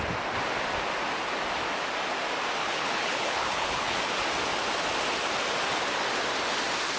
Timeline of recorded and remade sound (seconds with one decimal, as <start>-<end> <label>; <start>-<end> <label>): 0.0-2.6 recorded; 2.6-4.0 remade; 4.0-7.0 recorded